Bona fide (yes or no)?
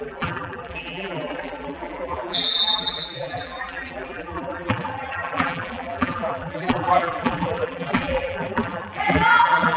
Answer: no